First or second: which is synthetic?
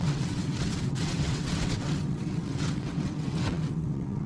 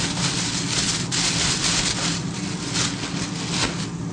first